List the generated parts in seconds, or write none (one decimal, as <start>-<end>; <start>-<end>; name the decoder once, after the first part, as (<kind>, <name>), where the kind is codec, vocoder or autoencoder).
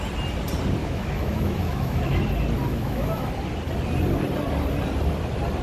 0.8-2.2 (autoencoder, DAC-VAE); 2.7-3.3